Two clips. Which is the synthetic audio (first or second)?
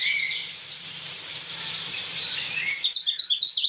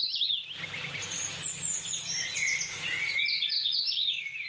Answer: first